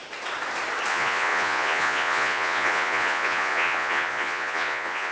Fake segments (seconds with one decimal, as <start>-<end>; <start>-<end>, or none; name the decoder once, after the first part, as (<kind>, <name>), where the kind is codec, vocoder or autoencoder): 0.9-5.1 (vocoder, Vocos)